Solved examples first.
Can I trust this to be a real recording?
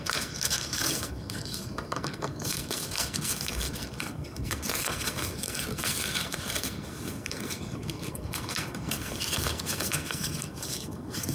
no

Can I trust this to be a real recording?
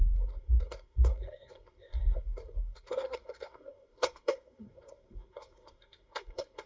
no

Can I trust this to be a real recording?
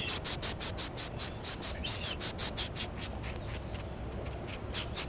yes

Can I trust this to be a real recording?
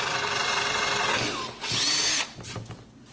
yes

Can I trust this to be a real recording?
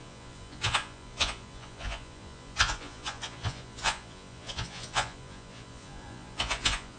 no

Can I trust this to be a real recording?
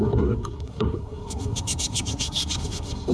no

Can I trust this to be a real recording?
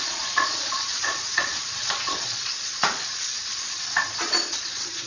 no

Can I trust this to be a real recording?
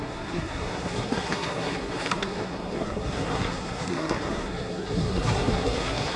no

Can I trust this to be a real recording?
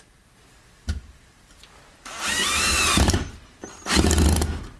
yes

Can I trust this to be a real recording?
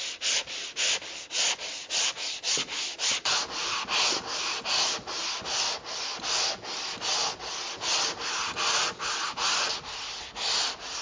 yes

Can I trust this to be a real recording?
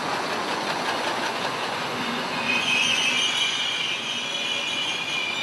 no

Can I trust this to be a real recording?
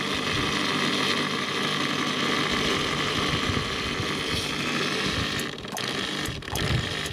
yes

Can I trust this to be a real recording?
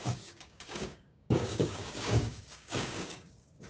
no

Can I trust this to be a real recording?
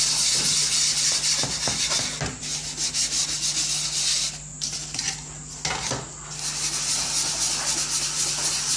yes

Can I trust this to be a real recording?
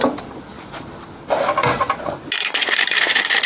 yes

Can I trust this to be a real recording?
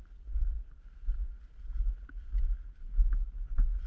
yes